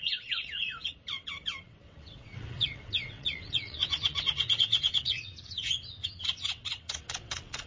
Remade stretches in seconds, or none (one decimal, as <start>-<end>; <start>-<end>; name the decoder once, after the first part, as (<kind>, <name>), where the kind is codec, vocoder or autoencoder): 0.0-7.7 (vocoder, WaveNeXt)